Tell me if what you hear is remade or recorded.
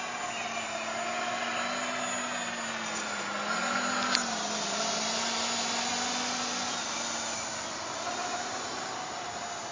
recorded